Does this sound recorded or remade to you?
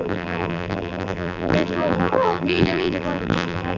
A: remade